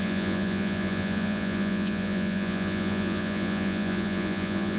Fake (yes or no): yes